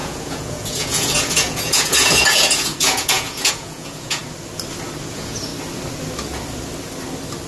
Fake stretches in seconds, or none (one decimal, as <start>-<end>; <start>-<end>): 0.0-4.2; 5.1-5.5